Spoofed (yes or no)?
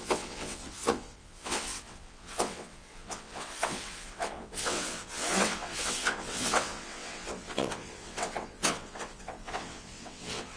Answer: yes